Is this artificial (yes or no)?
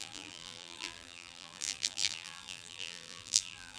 yes